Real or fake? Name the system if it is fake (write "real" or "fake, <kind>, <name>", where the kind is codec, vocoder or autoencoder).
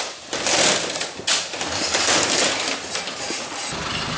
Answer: real